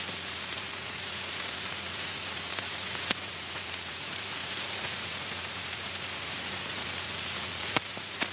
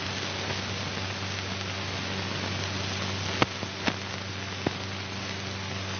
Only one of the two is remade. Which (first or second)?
first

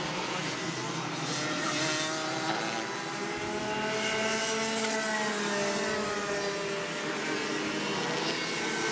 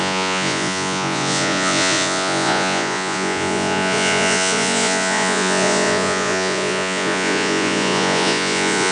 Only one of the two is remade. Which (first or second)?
second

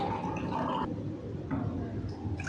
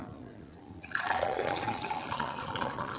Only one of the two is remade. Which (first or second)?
second